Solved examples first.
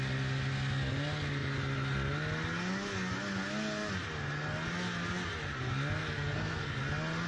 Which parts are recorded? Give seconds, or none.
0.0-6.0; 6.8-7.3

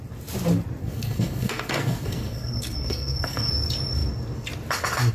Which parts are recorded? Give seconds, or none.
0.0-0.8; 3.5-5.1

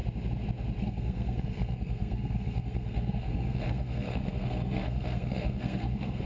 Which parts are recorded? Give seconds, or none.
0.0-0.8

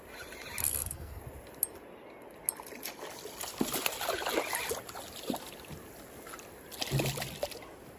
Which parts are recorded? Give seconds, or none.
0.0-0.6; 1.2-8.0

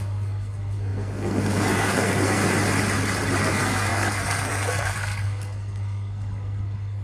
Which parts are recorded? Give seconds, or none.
2.4-3.4

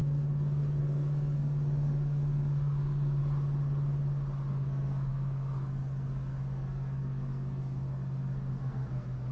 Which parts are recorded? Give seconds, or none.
3.2-4.5